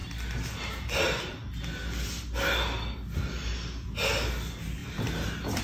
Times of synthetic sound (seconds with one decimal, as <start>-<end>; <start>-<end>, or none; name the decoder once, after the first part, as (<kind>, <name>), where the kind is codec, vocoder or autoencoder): none